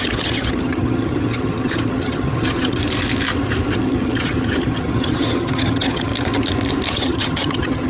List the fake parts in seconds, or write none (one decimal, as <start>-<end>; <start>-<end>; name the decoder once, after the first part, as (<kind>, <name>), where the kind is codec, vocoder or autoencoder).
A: 0.0-2.8 (vocoder, HiFi-GAN); 3.7-6.1; 6.9-7.9